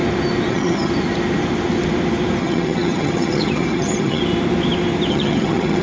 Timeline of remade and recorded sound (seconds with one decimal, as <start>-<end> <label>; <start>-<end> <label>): 0.0-0.5 recorded; 0.5-0.9 remade; 0.9-2.4 recorded; 2.4-4.2 remade; 4.2-5.1 recorded; 5.1-5.8 remade